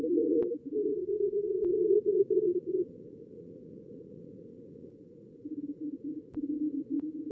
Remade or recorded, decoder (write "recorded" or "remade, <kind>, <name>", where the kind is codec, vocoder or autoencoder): remade, vocoder, Vocos